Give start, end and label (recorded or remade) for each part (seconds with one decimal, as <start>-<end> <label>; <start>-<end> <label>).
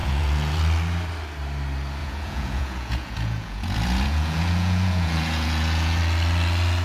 0.0-0.6 remade; 0.6-2.0 recorded; 2.0-6.0 remade; 6.0-6.8 recorded